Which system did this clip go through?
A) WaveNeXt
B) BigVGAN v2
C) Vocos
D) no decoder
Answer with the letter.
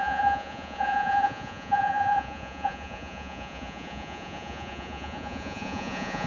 C